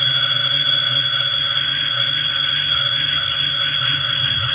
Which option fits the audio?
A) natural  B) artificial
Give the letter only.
B